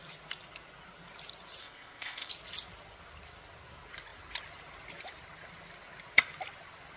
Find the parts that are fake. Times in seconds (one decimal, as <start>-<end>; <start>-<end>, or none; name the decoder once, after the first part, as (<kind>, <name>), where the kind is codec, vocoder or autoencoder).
1.6-2.3 (codec, ZipCodec)